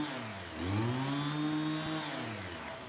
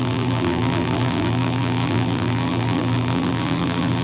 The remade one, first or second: second